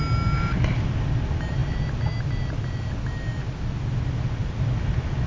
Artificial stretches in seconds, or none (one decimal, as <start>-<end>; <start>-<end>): none